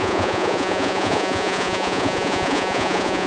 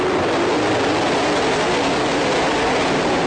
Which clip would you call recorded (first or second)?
second